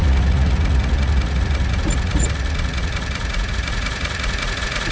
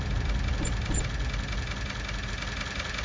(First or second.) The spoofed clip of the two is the first